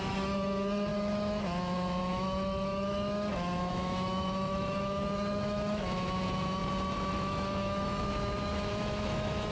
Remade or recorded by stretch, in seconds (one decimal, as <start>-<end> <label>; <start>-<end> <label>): 0.0-6.6 remade; 6.6-7.1 recorded; 7.1-9.5 remade